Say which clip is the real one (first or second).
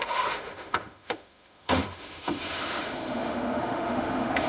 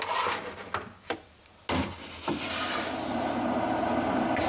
second